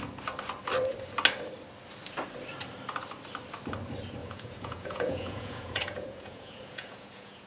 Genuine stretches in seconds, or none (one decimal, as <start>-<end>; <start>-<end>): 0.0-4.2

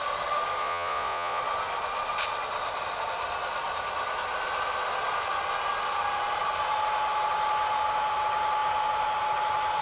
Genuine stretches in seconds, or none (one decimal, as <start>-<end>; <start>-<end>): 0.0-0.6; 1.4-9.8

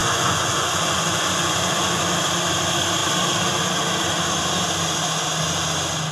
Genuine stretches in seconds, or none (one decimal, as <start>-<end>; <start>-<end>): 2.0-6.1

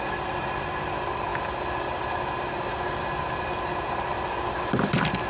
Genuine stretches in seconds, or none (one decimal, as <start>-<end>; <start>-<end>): 0.0-5.3

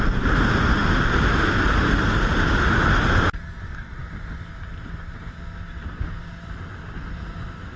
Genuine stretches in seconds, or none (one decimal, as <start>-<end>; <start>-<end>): 0.0-7.8

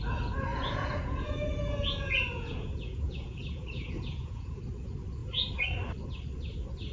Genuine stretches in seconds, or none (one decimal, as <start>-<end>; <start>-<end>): 0.0-0.5; 4.6-6.9

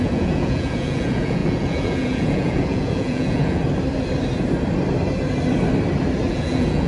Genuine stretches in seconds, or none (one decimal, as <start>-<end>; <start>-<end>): 3.6-6.3